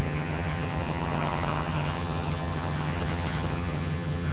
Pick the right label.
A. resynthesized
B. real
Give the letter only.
A